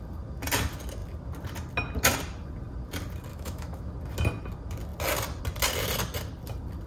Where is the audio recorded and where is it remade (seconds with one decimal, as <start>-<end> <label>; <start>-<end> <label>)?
0.0-3.3 recorded; 3.3-3.9 remade; 3.9-6.9 recorded